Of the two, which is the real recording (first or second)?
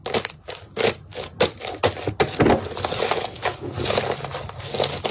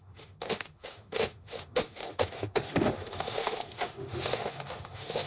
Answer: first